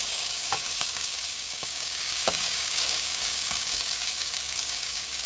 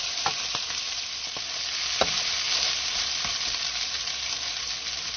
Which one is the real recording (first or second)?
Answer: second